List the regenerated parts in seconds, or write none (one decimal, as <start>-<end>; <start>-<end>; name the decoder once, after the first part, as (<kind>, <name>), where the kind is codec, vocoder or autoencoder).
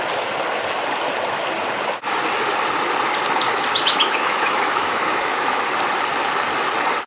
3.7-5.7 (autoencoder, DAC-VAE)